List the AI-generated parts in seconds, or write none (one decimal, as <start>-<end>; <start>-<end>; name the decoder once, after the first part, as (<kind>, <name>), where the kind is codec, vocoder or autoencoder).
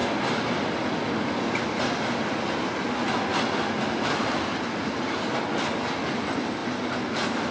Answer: none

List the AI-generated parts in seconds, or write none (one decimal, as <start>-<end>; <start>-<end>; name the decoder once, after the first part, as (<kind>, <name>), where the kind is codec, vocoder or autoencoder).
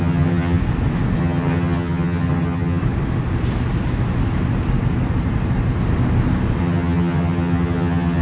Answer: 0.0-0.6 (vocoder, HiFi-GAN); 1.2-2.8; 6.6-8.2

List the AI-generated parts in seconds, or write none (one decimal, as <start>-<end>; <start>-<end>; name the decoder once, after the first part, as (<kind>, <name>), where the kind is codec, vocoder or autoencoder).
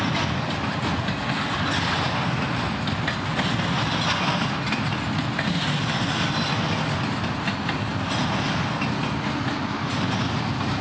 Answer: none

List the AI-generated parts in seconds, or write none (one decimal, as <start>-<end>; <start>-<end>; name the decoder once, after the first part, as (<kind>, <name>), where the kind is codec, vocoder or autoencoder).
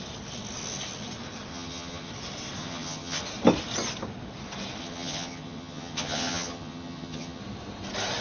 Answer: 1.5-2.1 (vocoder, HiFi-GAN); 2.6-3.2; 4.8-7.4